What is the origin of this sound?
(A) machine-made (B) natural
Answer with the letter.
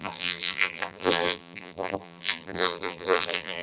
A